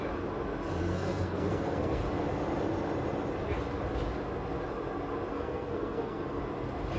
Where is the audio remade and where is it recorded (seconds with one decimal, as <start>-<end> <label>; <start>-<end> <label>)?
0.0-0.8 recorded; 0.8-2.0 remade; 2.0-5.3 recorded; 5.3-6.4 remade; 6.4-7.0 recorded